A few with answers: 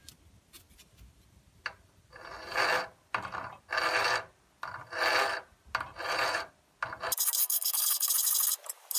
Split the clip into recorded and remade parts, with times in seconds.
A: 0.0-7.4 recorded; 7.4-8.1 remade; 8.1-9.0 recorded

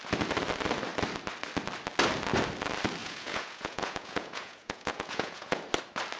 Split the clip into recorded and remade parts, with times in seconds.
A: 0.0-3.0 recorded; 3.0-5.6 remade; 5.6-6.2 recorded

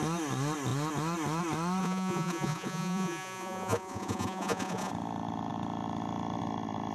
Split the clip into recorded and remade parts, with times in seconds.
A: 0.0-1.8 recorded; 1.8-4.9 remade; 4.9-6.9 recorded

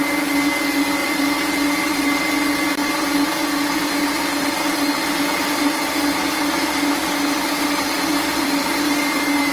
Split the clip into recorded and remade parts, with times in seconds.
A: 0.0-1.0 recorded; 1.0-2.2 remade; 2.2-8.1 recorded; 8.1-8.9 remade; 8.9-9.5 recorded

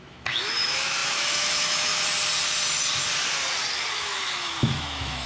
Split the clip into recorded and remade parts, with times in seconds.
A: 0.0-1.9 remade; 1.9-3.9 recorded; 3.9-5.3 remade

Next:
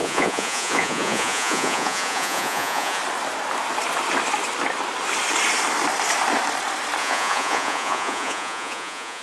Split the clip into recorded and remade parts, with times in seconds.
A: 0.0-3.0 remade; 3.0-7.0 recorded; 7.0-9.2 remade

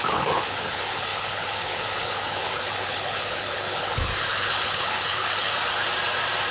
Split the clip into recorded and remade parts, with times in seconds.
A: 0.0-5.5 remade; 5.5-6.5 recorded

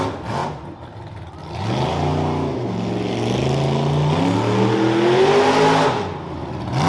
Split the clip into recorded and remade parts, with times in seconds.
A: 0.0-6.9 recorded